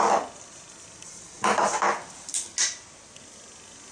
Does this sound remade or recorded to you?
recorded